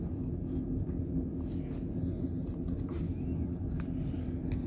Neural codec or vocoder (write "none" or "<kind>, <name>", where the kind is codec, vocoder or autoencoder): none